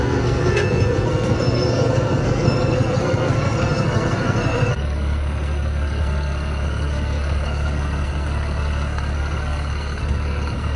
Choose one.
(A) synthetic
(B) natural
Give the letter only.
A